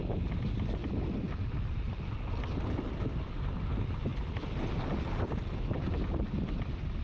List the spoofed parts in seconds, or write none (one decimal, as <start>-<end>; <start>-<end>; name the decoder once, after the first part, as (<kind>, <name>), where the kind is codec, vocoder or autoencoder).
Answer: none